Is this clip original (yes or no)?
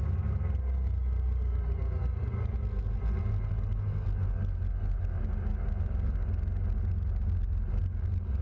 yes